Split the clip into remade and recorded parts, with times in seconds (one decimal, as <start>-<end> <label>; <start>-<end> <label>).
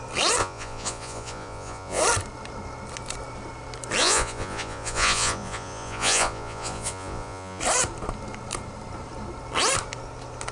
0.0-0.4 recorded; 0.4-2.0 remade; 2.0-4.0 recorded; 4.0-7.6 remade; 7.6-10.5 recorded